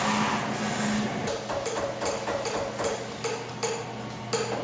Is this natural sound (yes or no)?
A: yes